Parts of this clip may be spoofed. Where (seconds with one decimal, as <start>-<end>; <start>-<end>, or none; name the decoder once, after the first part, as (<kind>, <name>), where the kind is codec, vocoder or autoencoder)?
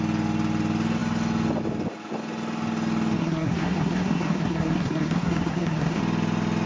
3.2-6.0 (codec, SNAC)